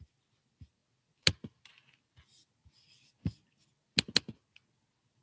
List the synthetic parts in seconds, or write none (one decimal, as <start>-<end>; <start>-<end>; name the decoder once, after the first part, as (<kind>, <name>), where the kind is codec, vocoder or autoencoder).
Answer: none